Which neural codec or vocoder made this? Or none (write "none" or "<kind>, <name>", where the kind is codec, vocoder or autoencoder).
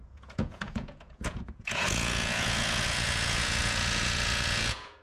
vocoder, Vocos